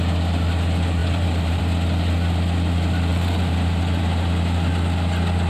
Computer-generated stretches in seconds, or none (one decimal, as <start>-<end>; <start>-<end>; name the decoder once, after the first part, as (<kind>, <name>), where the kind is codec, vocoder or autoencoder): 1.0-1.6 (vocoder, BigVGAN v2); 3.1-4.0